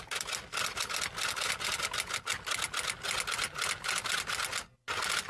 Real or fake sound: real